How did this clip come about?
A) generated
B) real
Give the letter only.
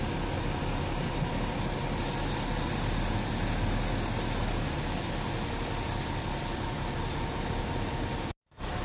B